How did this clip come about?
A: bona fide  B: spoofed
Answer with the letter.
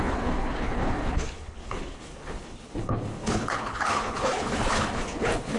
B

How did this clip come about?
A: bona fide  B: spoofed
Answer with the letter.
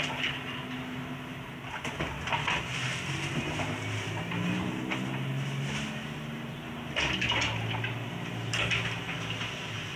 B